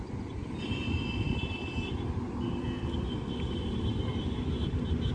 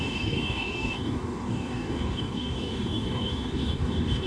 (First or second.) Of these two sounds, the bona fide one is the first